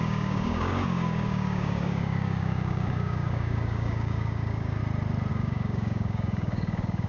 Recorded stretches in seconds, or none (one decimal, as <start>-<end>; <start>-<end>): 4.8-5.3